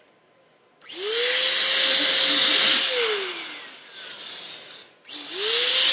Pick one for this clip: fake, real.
real